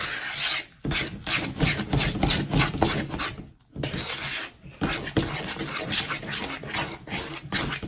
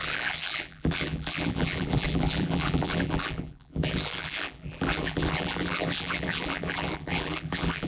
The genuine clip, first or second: first